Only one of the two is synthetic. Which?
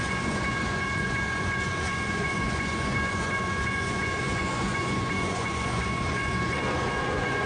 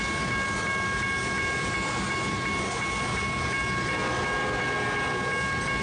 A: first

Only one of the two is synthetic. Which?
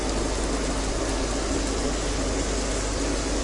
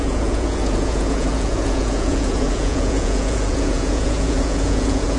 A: second